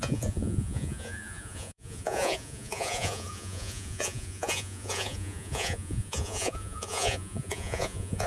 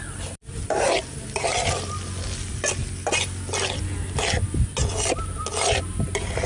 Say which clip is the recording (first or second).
second